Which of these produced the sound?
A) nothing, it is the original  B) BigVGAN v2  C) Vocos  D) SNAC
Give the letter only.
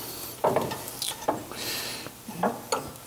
A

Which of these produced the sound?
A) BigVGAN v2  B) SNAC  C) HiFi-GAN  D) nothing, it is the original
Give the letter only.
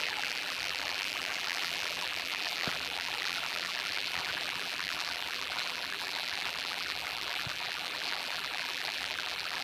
A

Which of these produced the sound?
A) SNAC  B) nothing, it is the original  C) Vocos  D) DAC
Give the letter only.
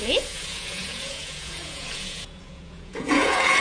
C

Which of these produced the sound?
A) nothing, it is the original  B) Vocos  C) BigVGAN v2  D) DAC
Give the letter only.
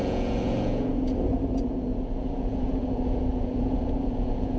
B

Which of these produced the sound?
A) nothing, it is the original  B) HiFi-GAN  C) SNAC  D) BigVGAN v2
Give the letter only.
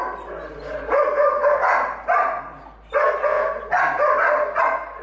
A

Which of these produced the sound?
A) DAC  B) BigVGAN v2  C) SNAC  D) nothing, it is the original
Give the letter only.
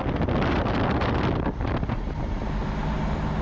D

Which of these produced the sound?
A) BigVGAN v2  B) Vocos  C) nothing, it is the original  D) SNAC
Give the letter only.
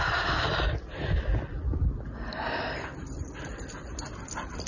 C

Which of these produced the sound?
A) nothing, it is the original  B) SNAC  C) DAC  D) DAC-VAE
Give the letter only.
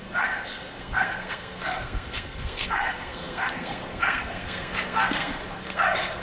B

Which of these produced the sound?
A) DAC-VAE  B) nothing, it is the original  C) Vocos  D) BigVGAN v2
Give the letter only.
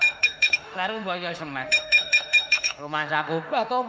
A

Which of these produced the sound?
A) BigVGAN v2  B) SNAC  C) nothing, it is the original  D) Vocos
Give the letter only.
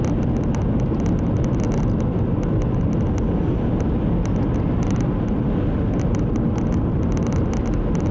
C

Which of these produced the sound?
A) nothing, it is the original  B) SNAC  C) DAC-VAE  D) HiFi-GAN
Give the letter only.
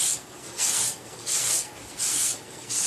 B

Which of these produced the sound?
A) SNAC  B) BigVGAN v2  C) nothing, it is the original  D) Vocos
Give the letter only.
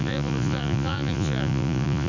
D